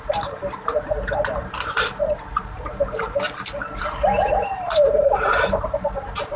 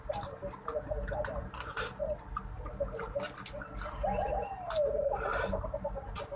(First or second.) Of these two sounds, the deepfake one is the first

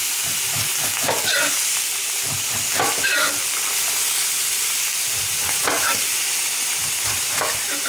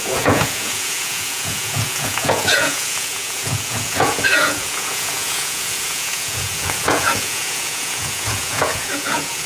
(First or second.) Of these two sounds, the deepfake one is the second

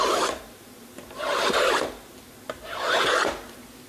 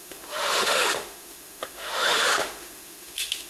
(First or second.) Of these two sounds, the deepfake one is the second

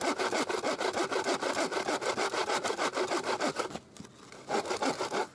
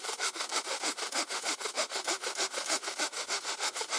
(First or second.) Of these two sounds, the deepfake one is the second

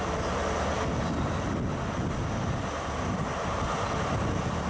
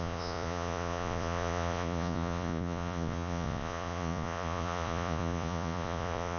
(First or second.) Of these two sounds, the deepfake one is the second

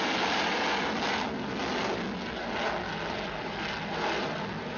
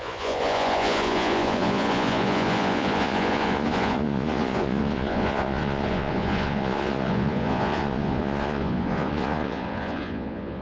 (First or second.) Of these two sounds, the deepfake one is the second